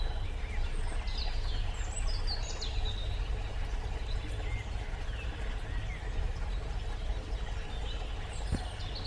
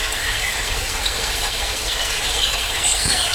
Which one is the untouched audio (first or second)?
first